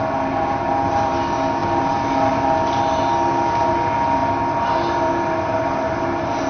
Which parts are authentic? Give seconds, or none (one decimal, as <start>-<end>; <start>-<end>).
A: 0.0-6.5